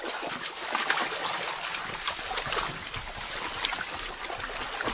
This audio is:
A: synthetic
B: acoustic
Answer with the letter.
B